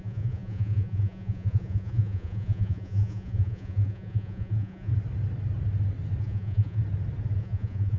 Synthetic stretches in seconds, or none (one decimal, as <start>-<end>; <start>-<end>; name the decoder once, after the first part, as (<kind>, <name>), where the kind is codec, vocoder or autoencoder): 0.0-4.9 (vocoder, Vocos); 6.2-6.8; 7.4-8.0